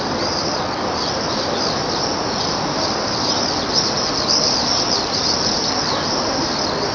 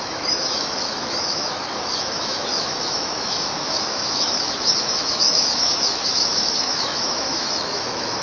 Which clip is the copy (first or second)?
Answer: second